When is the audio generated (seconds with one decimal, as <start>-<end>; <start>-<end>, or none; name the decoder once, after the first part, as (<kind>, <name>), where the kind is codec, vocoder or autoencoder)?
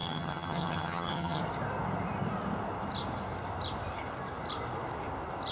0.0-1.4 (vocoder, HiFi-GAN)